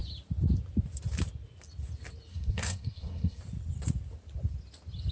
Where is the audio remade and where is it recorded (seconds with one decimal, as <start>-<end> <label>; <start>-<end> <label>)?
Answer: 0.0-2.3 recorded; 2.3-3.4 remade; 3.4-5.1 recorded

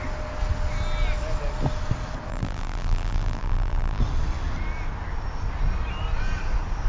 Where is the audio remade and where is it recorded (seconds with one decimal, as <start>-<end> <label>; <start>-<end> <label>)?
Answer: 0.0-2.3 recorded; 2.3-4.0 remade; 4.0-6.9 recorded

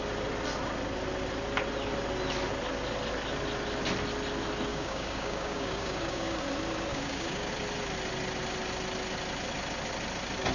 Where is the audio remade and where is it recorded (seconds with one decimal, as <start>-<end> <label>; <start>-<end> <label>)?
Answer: 0.0-4.7 recorded; 4.7-6.4 remade; 6.4-6.9 recorded; 6.9-7.5 remade; 7.5-10.5 recorded

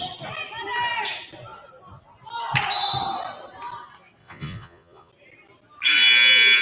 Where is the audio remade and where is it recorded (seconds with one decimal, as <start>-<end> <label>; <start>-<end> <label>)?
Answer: 0.0-4.2 recorded; 4.2-5.1 remade; 5.1-6.6 recorded

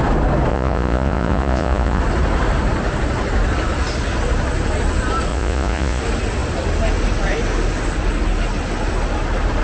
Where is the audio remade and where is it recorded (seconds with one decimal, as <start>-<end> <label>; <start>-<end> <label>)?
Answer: 0.0-0.5 recorded; 0.5-2.0 remade; 2.0-5.3 recorded; 5.3-6.0 remade; 6.0-9.6 recorded